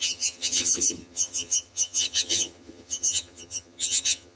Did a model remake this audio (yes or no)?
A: yes